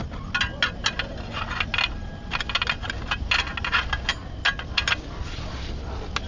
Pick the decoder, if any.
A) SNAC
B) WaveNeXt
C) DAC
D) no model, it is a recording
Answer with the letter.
D